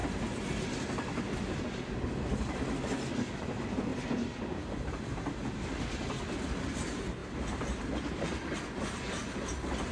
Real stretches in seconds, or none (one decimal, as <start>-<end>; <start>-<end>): 0.0-3.9; 4.9-7.2; 7.8-9.9